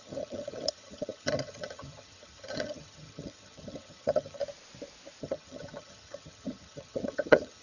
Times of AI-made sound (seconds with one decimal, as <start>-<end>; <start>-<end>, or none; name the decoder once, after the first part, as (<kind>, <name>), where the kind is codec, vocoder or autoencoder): 0.0-4.4 (vocoder, HiFi-GAN); 5.2-7.6